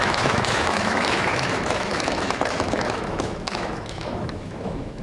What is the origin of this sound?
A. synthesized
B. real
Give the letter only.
A